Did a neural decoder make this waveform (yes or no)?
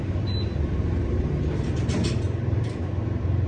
no